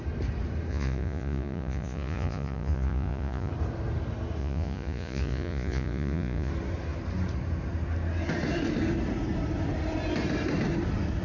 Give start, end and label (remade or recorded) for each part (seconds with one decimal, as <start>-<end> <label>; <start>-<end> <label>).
0.0-0.7 recorded; 0.7-3.5 remade; 3.5-4.4 recorded; 4.4-6.5 remade; 6.5-11.2 recorded